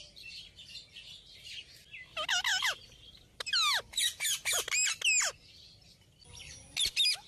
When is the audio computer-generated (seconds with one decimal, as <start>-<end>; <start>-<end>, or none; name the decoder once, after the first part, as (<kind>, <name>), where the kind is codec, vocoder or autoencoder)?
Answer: none

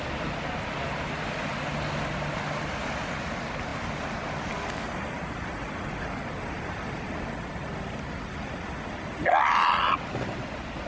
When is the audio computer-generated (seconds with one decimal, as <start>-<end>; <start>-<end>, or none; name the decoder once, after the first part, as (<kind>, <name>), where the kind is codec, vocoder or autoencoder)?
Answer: none

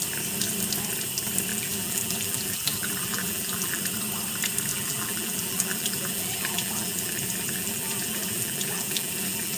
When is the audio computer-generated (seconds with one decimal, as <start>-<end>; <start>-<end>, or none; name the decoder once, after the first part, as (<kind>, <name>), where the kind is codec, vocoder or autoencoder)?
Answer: 1.5-3.8 (vocoder, BigVGAN v2); 4.7-9.6

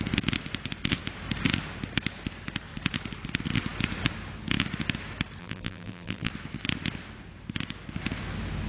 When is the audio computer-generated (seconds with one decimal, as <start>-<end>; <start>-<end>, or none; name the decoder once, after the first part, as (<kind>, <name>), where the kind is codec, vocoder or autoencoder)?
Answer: 5.4-6.3 (vocoder, BigVGAN v2)